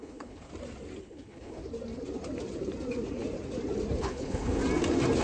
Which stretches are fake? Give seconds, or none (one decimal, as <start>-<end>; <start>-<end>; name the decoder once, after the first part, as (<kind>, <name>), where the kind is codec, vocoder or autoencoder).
0.0-0.5 (codec, HILCodec); 1.0-1.6; 4.0-4.6